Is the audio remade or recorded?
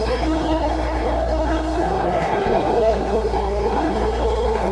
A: remade